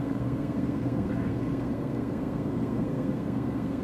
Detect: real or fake fake